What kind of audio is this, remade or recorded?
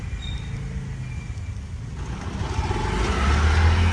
recorded